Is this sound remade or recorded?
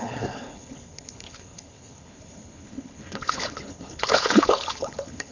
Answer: remade